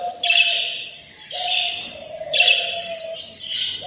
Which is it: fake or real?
fake